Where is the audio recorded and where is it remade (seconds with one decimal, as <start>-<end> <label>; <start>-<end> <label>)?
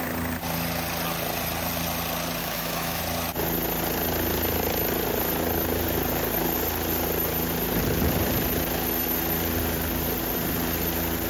0.0-2.4 recorded; 2.4-3.0 remade; 3.0-11.3 recorded